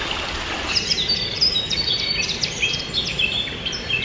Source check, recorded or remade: remade